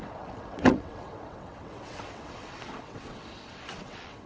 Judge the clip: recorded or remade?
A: remade